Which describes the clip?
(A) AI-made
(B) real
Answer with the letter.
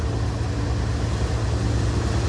B